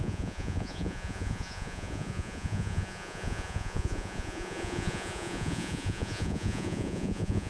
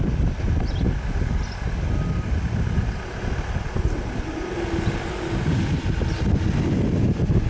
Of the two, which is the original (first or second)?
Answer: second